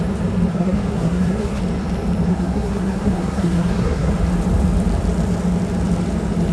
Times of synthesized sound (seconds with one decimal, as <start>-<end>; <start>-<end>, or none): 0.5-1.6; 2.3-4.1